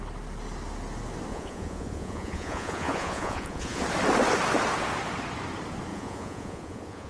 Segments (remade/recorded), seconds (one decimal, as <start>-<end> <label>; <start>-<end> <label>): 0.0-1.3 recorded; 1.3-3.8 remade; 3.8-5.9 recorded; 5.9-7.1 remade